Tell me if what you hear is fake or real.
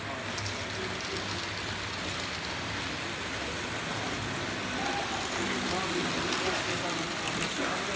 real